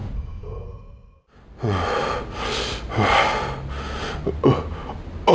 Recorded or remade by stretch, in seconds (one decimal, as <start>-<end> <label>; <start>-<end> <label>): 0.0-0.9 remade; 0.9-5.3 recorded